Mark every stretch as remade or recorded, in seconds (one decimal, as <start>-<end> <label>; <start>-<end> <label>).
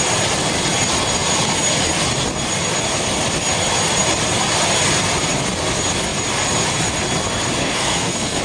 0.0-7.6 recorded; 7.6-8.4 remade